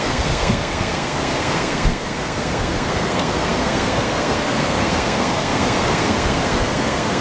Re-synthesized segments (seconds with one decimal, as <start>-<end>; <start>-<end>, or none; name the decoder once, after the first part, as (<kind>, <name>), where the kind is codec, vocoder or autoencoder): 0.0-7.2 (codec, SNAC)